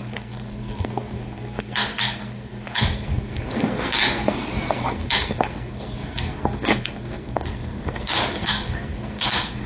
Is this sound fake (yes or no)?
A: yes